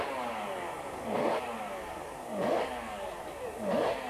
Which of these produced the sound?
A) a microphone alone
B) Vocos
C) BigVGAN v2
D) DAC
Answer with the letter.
D